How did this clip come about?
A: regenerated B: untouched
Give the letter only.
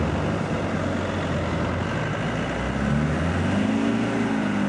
B